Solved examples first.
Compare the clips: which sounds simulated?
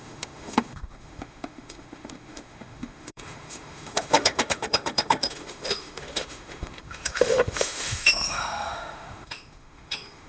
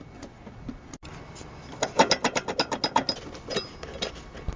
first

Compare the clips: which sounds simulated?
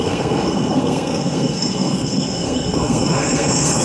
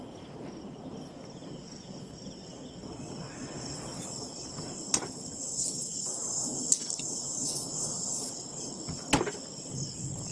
first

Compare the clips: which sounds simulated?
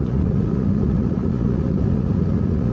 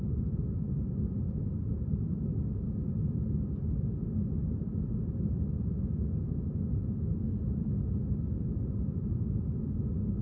first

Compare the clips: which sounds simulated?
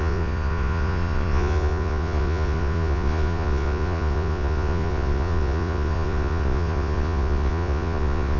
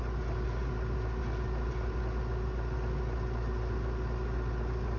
first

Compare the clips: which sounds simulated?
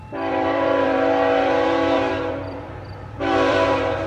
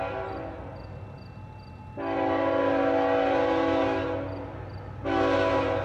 first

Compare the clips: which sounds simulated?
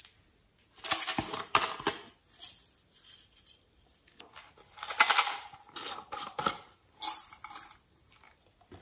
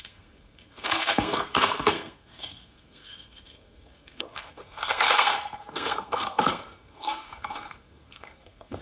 second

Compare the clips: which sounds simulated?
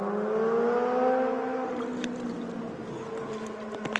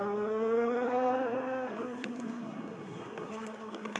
second